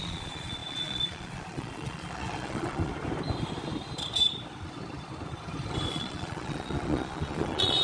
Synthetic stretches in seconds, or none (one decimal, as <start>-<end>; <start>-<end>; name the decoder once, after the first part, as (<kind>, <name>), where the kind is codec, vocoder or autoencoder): 0.0-2.9 (vocoder, Vocos); 5.9-7.8